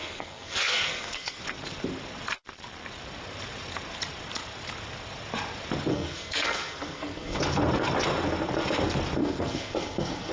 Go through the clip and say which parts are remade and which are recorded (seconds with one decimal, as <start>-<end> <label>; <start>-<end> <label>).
0.0-1.4 remade; 1.4-5.9 recorded; 5.9-7.4 remade; 7.4-9.2 recorded; 9.2-10.3 remade